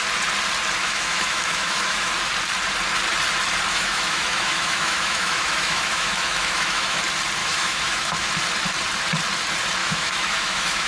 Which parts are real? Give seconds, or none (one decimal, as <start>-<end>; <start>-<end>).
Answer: 0.0-0.8; 2.1-3.7; 7.0-7.4; 8.3-9.8